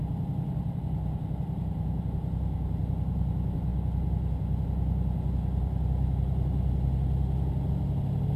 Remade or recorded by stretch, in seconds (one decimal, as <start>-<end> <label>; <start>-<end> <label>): 0.0-8.4 recorded